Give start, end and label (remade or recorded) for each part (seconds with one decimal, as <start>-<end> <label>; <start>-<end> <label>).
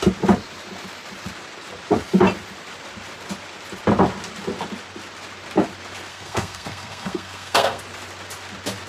0.0-6.1 recorded; 6.1-7.8 remade; 7.8-8.9 recorded